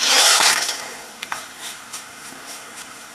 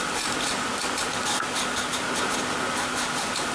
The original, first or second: second